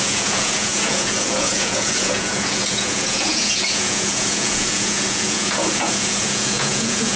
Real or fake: fake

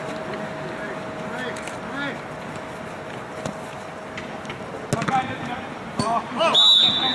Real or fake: real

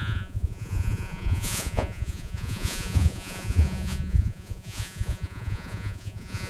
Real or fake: fake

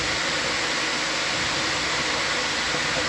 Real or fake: real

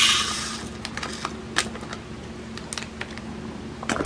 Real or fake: real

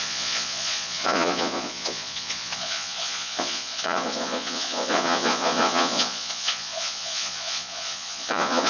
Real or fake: fake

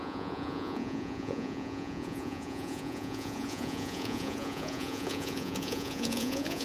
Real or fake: fake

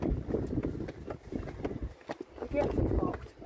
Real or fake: real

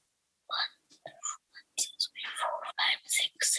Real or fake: real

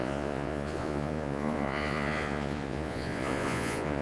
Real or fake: fake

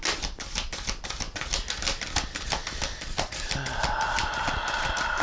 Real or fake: real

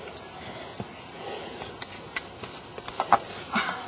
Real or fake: real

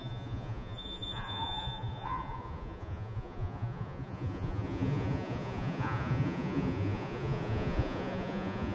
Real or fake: fake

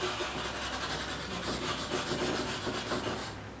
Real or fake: real